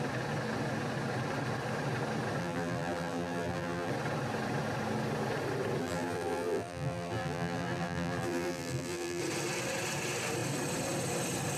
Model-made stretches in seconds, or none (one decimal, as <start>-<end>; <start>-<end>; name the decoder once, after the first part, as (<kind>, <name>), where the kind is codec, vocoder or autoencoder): 2.4-3.9 (vocoder, BigVGAN v2); 5.8-9.2